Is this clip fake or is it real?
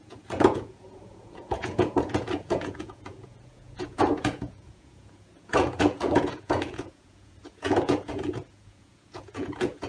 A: fake